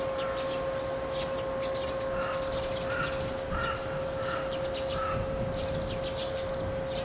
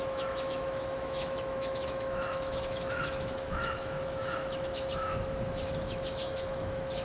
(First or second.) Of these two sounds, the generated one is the second